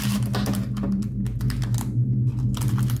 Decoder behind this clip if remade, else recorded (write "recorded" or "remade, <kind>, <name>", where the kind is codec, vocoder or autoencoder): recorded